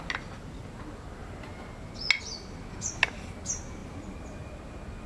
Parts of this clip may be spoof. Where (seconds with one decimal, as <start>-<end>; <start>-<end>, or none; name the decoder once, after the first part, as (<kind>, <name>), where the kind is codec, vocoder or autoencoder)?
none